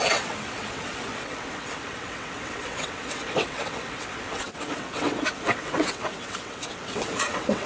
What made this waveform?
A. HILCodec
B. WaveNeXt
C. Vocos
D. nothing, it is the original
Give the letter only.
B